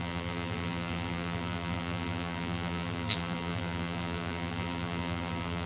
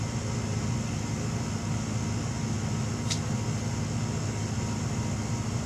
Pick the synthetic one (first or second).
first